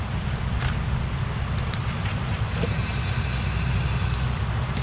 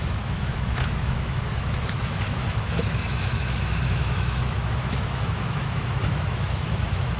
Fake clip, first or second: second